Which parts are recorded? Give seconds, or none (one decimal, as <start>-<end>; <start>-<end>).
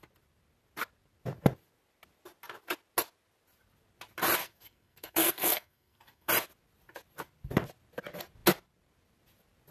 0.0-4.4; 6.3-9.7